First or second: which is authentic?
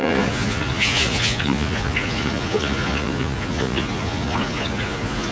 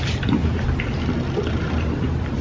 second